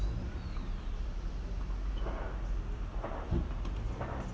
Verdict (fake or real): real